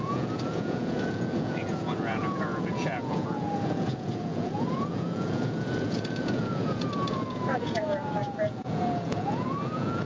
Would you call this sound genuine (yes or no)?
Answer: no